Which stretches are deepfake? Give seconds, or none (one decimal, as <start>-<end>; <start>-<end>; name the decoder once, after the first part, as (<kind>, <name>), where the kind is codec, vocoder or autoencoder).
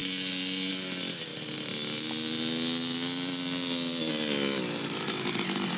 none